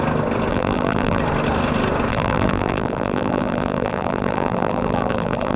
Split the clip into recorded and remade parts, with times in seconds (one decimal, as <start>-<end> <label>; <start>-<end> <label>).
0.0-0.5 recorded; 0.5-1.2 remade; 1.2-2.1 recorded; 2.1-5.6 remade